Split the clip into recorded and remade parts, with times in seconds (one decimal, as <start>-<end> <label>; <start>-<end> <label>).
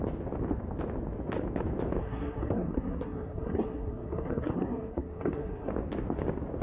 0.0-2.0 recorded; 2.0-5.7 remade; 5.7-6.6 recorded